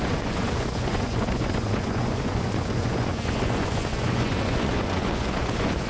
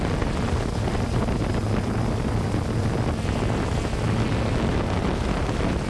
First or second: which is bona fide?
second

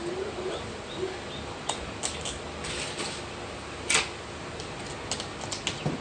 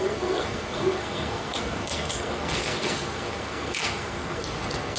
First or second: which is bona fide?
first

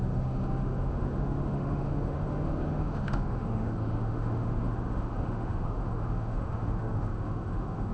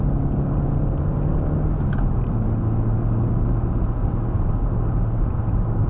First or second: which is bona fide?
second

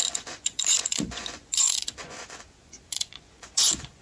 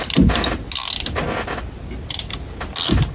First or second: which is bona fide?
second